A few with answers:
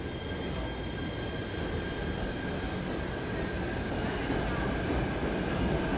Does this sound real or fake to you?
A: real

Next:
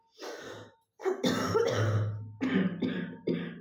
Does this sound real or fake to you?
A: real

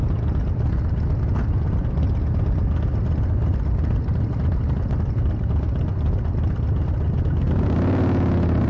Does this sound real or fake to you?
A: real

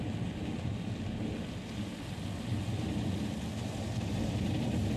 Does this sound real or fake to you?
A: real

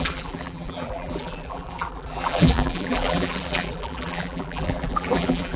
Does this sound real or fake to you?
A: fake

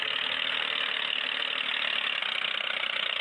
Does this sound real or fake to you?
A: real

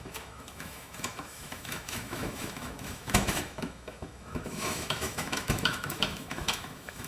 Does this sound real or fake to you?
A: fake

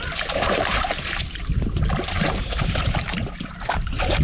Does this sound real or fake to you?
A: fake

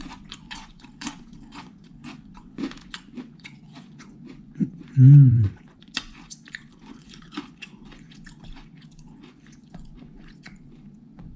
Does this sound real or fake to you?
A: fake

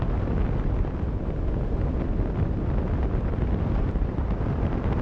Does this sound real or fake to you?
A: real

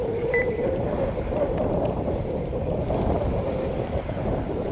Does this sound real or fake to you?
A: fake